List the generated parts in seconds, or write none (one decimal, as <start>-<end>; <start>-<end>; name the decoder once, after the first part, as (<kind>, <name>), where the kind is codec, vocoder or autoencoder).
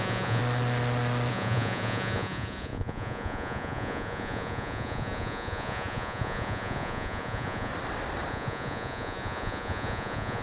0.0-0.4 (vocoder, Vocos); 1.3-7.7; 8.3-10.4